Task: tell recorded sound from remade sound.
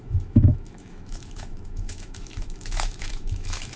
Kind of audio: remade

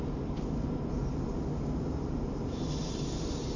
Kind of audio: recorded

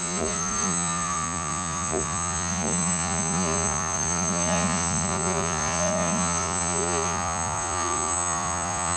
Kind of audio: remade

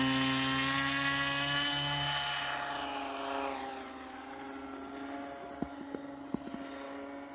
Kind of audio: recorded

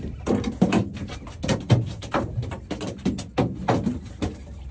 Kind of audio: recorded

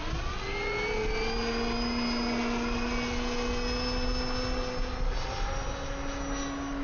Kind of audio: recorded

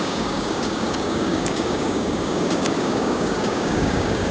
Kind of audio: remade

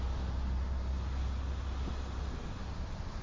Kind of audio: recorded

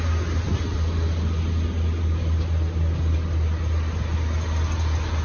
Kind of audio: recorded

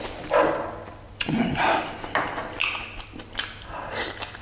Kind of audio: recorded